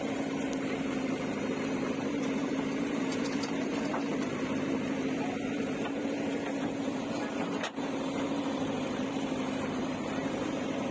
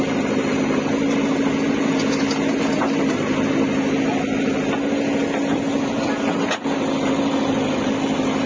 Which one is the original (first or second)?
second